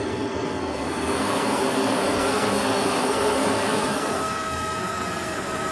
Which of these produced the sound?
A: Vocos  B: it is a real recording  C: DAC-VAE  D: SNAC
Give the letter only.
D